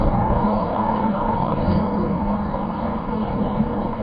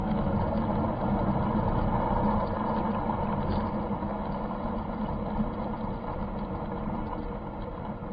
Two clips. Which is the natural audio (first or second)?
second